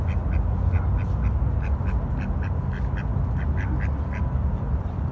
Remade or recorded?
recorded